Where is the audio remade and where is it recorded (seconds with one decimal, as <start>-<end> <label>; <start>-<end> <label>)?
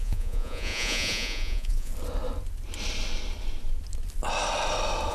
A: 0.0-1.9 remade; 1.9-5.1 recorded